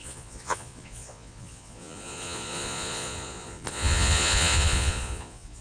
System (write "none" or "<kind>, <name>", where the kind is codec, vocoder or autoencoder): vocoder, Vocos